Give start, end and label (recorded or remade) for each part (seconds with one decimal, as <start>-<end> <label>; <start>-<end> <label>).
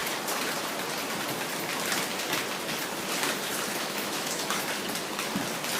0.0-3.7 recorded; 3.7-4.6 remade; 4.6-5.8 recorded